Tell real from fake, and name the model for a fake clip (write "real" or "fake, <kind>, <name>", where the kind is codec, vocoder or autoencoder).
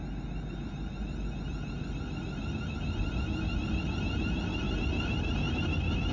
real